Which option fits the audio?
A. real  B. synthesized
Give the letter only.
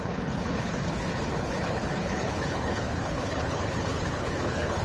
B